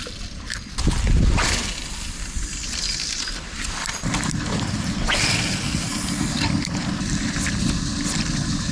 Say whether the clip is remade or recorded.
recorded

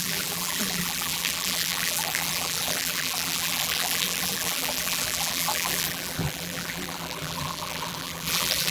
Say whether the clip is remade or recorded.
remade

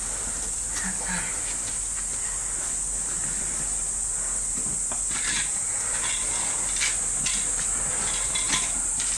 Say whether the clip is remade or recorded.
recorded